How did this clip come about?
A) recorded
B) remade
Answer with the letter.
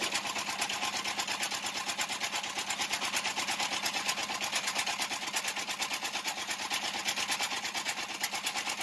A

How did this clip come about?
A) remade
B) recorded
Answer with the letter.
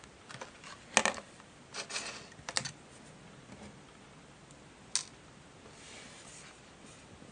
B